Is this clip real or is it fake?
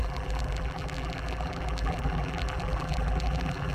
fake